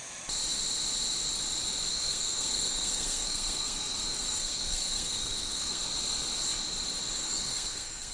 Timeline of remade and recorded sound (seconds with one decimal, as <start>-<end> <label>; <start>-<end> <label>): 0.0-1.9 recorded; 1.9-5.8 remade; 5.8-7.2 recorded; 7.2-8.1 remade